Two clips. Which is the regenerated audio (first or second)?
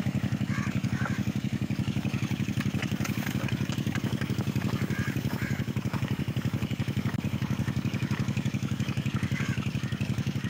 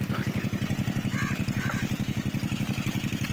first